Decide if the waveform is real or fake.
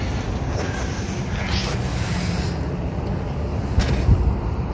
real